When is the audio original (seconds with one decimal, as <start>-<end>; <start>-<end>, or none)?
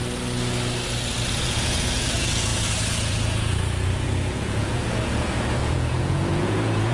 0.0-1.3